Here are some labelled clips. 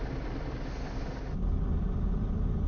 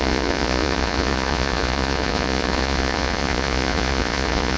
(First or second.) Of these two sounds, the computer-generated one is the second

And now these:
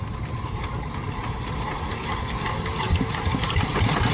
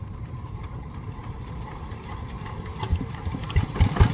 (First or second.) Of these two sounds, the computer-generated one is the second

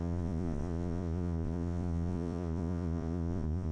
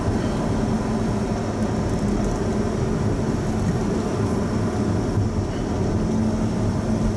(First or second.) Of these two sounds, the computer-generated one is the first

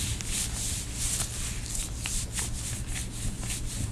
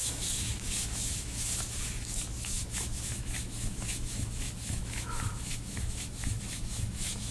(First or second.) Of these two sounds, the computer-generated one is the second